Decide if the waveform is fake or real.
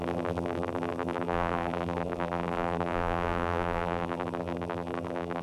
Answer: fake